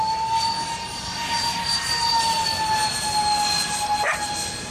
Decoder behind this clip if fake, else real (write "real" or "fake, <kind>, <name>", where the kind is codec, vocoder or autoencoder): real